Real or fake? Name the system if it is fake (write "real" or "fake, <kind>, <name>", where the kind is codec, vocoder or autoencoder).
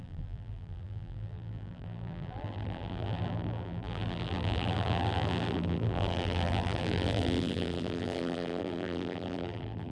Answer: fake, vocoder, BigVGAN v2